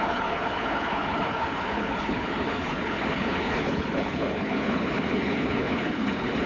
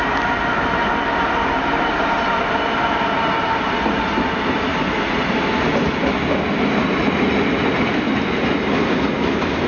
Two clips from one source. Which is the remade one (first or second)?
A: first